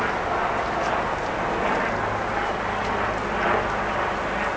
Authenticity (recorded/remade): recorded